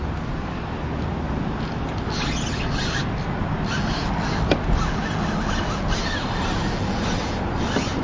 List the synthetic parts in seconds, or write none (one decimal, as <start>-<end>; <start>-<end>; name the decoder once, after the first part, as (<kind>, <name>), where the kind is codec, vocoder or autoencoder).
none